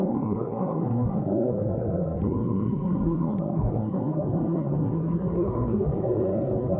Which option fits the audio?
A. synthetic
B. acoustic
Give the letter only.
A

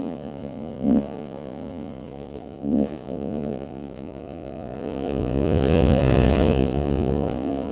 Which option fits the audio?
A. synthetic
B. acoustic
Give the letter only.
A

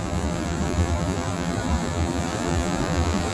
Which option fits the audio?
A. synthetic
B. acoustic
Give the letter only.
A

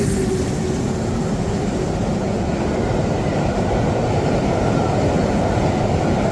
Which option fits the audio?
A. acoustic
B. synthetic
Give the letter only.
A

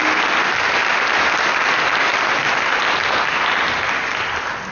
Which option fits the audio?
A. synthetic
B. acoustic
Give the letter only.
B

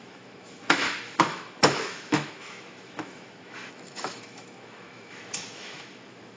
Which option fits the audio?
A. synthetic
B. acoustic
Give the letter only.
A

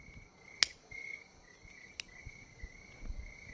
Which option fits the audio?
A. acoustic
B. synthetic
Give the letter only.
A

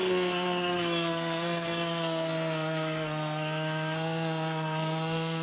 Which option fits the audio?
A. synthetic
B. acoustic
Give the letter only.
A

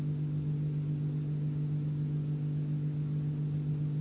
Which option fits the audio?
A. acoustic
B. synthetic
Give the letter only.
A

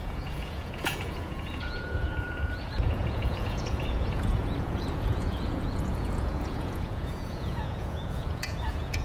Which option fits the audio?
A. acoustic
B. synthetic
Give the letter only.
B